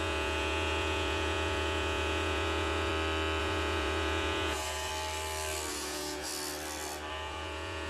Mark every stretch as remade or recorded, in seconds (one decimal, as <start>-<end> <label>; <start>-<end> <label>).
0.0-2.9 remade; 2.9-3.4 recorded; 3.4-4.9 remade; 4.9-5.7 recorded; 5.7-6.3 remade; 6.3-7.1 recorded; 7.1-7.9 remade